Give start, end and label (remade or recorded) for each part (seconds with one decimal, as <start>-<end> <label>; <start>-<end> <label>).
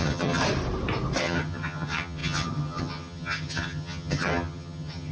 0.0-0.4 remade; 0.4-1.2 recorded; 1.2-5.1 remade